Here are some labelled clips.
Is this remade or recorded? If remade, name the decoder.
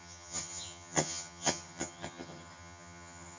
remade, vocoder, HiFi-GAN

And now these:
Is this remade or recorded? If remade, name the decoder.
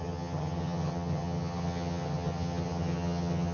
remade, vocoder, HiFi-GAN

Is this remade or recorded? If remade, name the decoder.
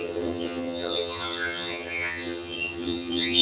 remade, vocoder, HiFi-GAN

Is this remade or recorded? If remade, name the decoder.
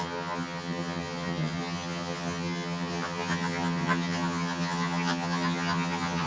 remade, vocoder, HiFi-GAN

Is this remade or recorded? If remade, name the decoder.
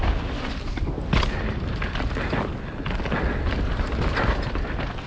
recorded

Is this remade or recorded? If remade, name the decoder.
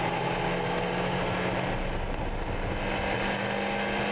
recorded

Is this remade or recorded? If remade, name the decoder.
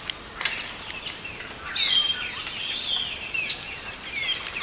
recorded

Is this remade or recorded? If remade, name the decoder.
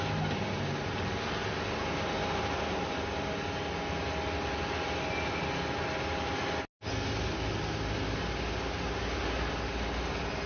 recorded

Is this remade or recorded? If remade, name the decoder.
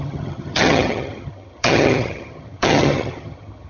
remade, vocoder, HiFi-GAN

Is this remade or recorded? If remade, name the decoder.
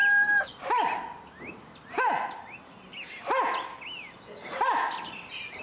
recorded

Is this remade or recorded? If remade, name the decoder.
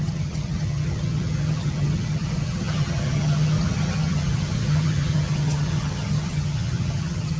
remade, vocoder, HiFi-GAN